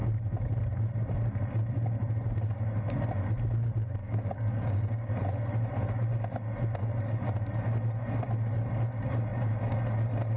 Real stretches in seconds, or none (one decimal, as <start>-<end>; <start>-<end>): 0.0-4.0; 5.1-10.4

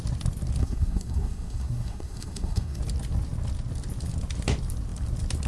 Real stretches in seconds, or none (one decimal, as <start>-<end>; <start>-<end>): 0.0-0.6; 2.8-5.5

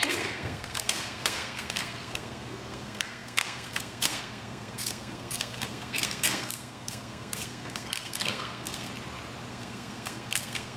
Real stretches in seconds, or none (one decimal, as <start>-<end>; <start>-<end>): 8.9-9.5

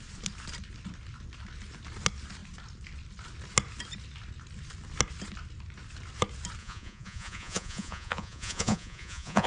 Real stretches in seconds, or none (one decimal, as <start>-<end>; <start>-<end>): 0.0-6.6

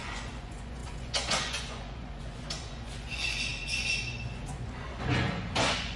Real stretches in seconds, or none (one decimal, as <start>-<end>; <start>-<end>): none

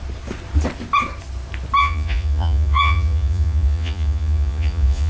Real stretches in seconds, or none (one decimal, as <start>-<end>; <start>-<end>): 0.0-1.8

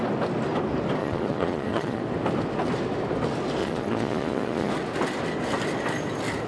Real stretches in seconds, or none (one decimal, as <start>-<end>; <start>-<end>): 0.0-1.0; 2.0-3.6; 4.7-6.5

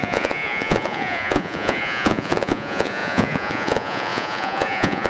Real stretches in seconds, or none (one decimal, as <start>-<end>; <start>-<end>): none